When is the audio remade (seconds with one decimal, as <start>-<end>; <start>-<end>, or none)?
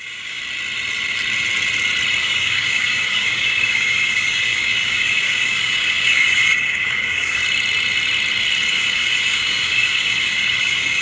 0.0-0.4; 2.2-7.4; 8.7-11.0